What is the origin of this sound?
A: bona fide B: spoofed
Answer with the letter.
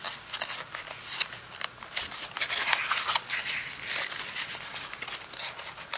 A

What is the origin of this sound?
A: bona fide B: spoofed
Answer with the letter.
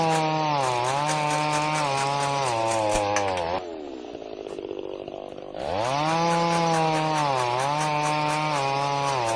A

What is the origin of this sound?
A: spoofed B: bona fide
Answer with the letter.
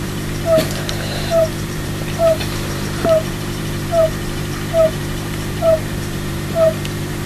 A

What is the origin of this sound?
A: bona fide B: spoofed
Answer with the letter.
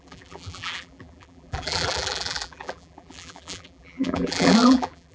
B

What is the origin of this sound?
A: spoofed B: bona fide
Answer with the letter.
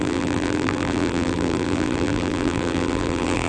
A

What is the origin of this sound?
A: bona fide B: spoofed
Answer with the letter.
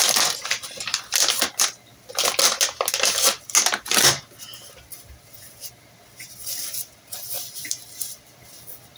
A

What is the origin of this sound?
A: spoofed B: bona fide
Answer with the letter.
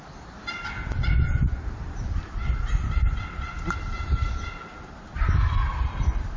B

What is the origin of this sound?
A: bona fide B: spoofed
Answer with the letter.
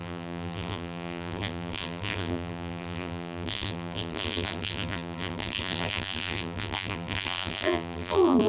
B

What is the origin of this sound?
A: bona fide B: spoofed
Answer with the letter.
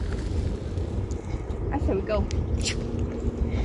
A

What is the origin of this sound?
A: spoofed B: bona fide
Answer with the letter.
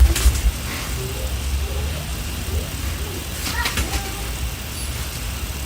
B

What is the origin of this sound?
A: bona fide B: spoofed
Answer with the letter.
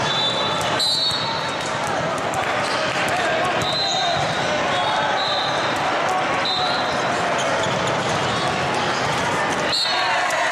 A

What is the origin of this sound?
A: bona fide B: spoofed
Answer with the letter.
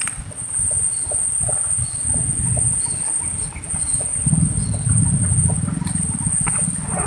A